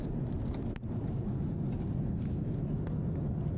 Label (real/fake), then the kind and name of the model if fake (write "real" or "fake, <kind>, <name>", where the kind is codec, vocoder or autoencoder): real